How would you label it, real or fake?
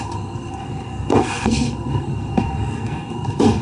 fake